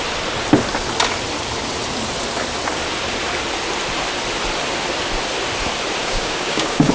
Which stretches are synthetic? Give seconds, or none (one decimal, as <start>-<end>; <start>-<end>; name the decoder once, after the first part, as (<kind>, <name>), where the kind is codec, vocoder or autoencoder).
6.0-6.9 (codec, DAC)